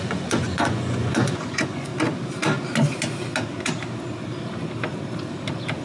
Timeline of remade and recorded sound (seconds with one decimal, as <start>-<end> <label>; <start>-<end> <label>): 0.0-1.9 remade; 1.9-5.8 recorded